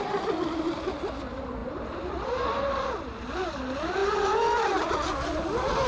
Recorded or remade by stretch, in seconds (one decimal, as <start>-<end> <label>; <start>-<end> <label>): 0.0-5.9 recorded